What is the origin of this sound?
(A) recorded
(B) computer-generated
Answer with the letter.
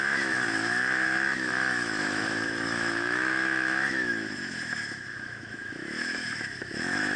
B